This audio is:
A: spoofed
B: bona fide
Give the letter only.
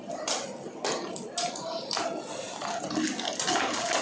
B